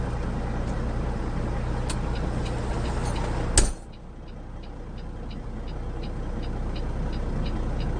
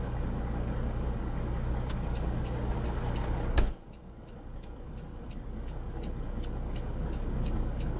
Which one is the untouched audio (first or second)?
first